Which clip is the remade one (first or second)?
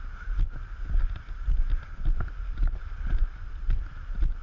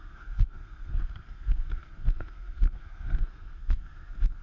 second